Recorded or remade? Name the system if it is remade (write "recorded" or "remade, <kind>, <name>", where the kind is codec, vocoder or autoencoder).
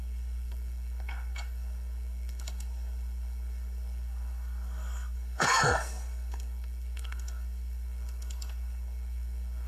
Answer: remade, codec, SNAC